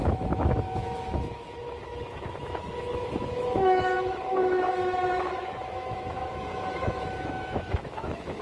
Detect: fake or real fake